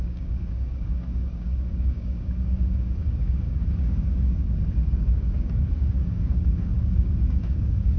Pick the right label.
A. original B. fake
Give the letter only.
B